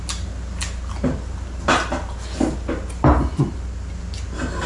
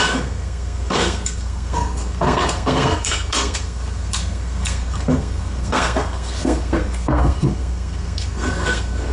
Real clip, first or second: first